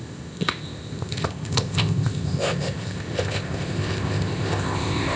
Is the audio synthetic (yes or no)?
yes